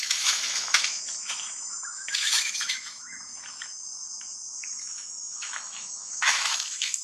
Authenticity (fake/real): fake